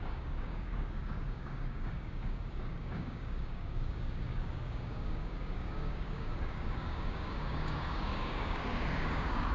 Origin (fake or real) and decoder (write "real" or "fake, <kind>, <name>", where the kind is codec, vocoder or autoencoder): fake, codec, DAC